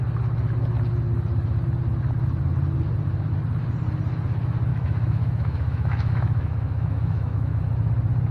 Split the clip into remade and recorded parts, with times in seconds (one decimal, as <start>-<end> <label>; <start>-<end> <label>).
0.0-4.7 recorded; 4.7-7.6 remade; 7.6-8.3 recorded